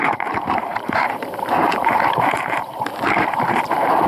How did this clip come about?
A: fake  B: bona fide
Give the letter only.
A